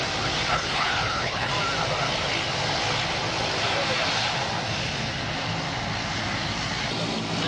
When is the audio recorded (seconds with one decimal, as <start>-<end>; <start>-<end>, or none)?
0.0-0.5; 1.5-7.5